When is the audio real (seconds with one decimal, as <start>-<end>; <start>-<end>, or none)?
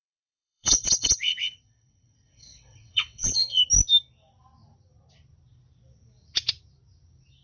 3.6-7.4